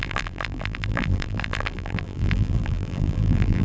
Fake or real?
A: fake